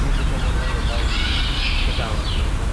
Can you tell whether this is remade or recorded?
recorded